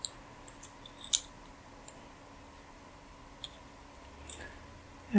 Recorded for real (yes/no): yes